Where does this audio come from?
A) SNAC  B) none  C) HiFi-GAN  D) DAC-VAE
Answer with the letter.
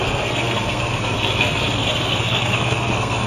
A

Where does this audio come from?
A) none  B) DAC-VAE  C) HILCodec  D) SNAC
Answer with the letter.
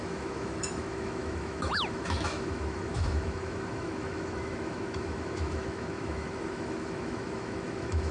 B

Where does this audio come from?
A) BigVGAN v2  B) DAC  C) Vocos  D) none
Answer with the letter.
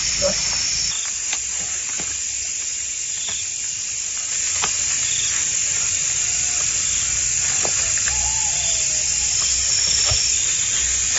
D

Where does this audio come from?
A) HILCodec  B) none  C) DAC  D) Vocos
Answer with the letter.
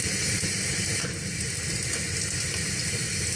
B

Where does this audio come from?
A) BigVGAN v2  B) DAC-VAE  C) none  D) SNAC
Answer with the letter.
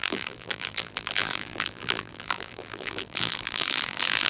A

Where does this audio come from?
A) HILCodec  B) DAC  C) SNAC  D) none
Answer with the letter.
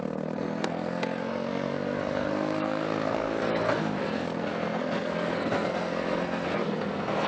C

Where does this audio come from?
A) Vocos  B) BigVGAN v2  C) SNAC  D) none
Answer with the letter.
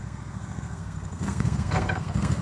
C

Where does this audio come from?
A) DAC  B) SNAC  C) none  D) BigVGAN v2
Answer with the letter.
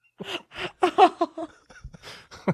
D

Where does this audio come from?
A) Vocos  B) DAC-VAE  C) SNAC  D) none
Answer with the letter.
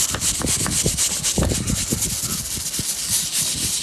D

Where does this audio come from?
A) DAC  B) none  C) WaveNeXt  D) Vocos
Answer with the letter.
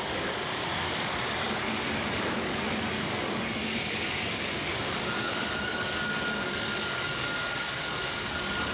A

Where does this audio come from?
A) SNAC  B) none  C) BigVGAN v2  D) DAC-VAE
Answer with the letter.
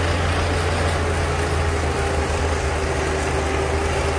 B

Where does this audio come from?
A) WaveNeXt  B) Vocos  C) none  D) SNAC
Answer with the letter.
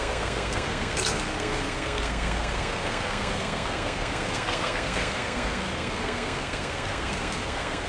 D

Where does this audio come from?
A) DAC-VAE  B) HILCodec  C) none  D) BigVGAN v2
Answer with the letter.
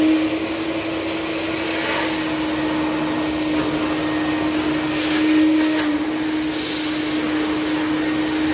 C